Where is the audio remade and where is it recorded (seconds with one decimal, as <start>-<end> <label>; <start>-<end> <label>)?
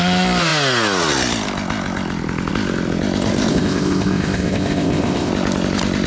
0.0-3.5 recorded; 3.5-5.3 remade; 5.3-6.1 recorded